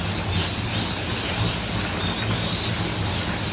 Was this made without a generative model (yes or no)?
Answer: yes